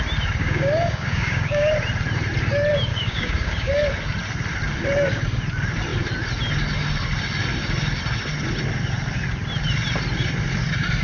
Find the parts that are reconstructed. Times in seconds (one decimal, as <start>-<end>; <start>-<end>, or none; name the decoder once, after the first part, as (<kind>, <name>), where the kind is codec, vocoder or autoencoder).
0.4-1.7 (codec, DAC); 2.9-3.7